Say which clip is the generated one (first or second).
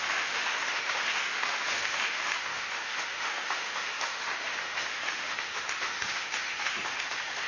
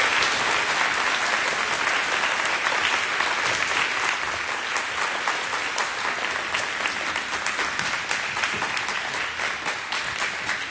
first